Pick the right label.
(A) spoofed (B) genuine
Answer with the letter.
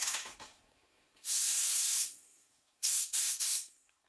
A